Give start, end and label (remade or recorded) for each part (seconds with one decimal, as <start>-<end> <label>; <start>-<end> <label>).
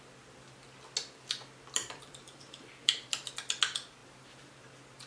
0.0-1.8 recorded; 1.8-3.3 remade; 3.3-4.0 recorded; 4.0-4.6 remade; 4.6-5.1 recorded